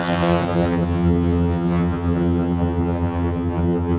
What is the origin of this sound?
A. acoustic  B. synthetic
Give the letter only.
B